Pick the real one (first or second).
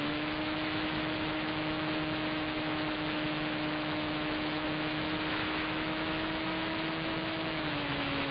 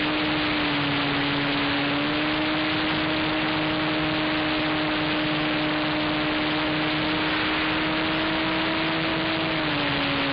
second